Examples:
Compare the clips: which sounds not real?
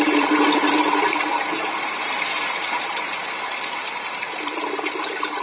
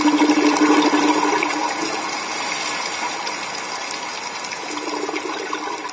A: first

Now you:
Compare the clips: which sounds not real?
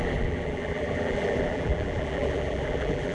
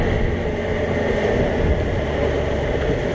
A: first